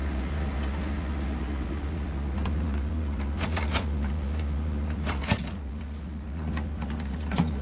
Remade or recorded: remade